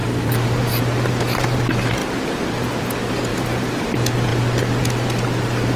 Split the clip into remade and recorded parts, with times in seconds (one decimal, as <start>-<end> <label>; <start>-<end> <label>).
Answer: 0.0-1.6 remade; 1.6-3.3 recorded; 3.3-3.9 remade; 3.9-5.8 recorded